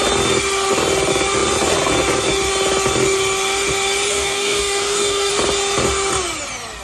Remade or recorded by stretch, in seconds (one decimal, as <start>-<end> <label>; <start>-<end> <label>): 0.0-4.1 recorded; 4.1-5.3 remade; 5.3-6.8 recorded